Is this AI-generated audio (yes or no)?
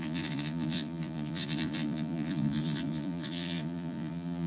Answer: yes